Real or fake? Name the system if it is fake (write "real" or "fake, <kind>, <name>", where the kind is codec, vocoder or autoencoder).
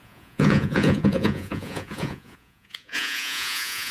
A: fake, vocoder, Vocos